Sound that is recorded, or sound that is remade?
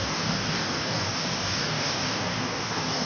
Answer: remade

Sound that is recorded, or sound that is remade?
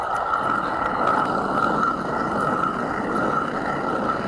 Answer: recorded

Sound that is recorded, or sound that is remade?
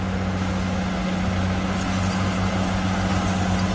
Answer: recorded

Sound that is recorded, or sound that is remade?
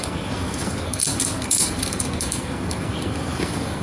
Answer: remade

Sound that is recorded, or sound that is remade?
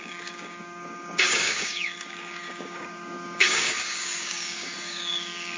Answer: remade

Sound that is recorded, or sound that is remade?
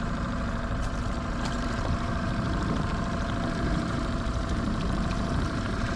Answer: remade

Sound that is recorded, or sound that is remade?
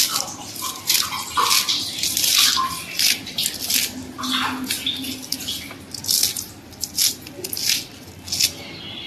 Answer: recorded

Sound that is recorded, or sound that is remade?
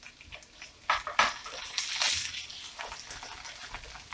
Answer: recorded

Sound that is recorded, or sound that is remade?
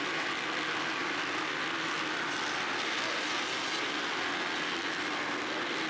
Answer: recorded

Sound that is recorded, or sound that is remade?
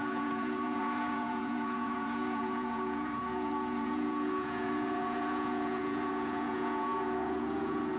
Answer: remade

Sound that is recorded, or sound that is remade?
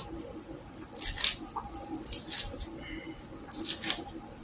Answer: recorded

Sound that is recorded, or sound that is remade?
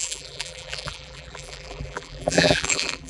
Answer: remade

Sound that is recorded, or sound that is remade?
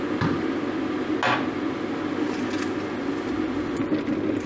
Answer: recorded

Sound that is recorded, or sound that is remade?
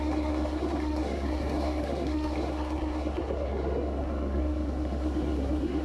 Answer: remade